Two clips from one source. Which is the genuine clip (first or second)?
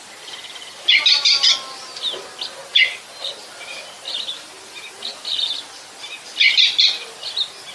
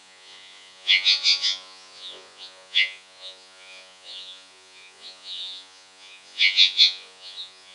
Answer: first